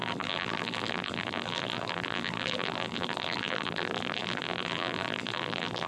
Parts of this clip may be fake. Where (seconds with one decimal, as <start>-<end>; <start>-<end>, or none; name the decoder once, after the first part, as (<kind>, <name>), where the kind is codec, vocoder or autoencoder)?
0.0-5.9 (vocoder, BigVGAN v2)